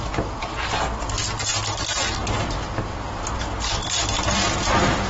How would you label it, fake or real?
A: real